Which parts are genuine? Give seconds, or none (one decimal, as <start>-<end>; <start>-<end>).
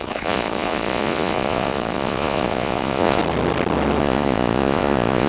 3.2-4.0